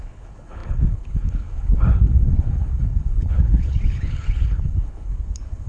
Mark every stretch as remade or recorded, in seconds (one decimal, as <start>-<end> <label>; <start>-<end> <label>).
0.0-5.7 remade